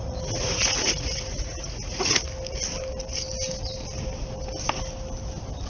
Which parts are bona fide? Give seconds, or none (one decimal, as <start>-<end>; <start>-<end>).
2.2-5.7